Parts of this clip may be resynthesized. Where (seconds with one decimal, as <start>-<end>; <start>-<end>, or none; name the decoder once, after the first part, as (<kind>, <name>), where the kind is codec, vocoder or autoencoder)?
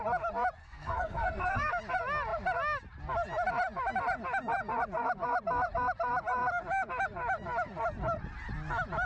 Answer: 0.6-1.7 (codec, SNAC)